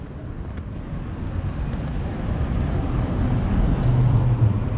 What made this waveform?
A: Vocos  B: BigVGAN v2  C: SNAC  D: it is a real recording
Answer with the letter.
D